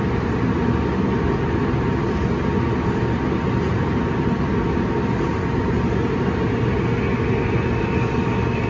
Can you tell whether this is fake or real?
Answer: real